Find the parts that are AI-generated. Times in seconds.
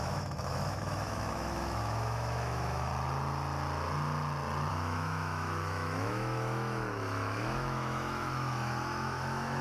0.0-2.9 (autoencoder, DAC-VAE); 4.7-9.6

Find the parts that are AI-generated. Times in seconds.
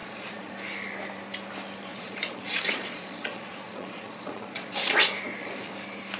0.0-0.5 (vocoder, Vocos); 1.9-5.1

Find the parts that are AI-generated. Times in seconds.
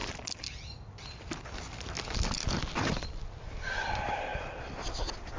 none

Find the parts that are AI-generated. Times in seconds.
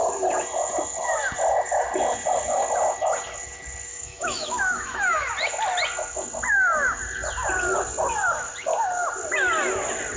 3.9-5.3 (autoencoder, DAC-VAE)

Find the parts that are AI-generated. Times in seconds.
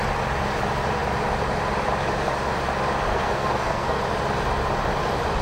3.1-4.0 (codec, SNAC)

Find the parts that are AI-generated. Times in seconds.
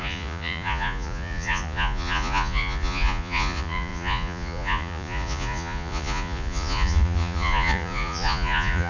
0.0-8.9 (vocoder, Vocos)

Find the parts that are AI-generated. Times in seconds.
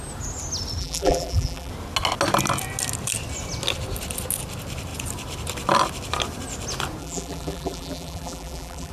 0.8-1.7 (vocoder, BigVGAN v2); 7.0-8.9